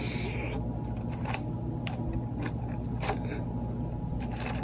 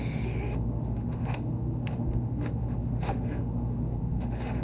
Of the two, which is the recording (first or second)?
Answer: first